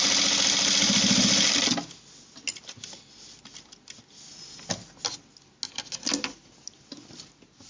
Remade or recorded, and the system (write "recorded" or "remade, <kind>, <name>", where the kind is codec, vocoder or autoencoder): recorded